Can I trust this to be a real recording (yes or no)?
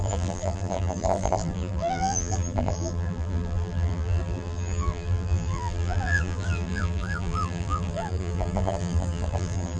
no